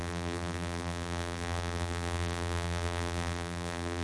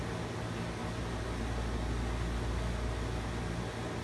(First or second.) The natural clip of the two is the second